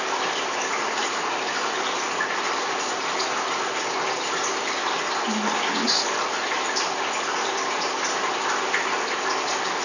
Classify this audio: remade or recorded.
recorded